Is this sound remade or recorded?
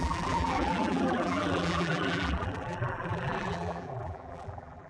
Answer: remade